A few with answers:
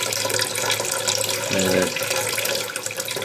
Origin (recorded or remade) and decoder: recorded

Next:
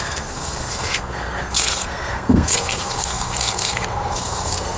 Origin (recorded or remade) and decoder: remade, codec, SNAC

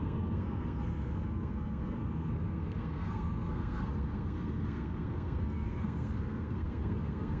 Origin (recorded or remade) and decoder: remade, codec, SNAC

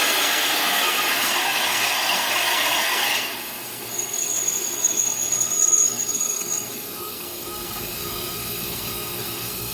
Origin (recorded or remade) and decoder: remade, codec, SNAC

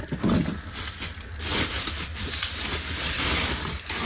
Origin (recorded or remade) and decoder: recorded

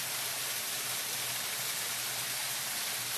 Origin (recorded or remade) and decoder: recorded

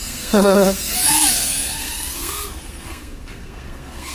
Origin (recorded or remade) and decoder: remade, codec, SNAC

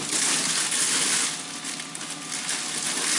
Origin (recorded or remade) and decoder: recorded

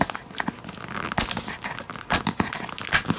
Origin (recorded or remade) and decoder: recorded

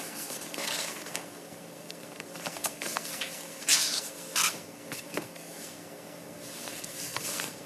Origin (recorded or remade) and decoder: remade, codec, SNAC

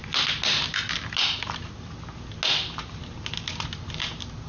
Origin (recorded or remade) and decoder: recorded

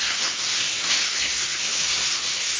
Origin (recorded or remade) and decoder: remade, codec, SNAC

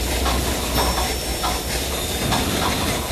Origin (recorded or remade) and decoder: recorded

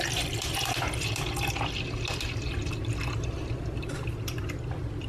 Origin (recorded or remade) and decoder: recorded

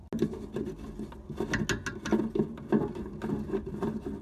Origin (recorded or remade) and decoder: recorded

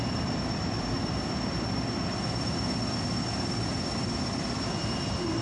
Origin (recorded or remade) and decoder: recorded